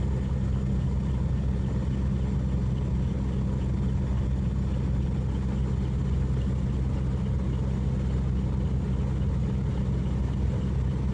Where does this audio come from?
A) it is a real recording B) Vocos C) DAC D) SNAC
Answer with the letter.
A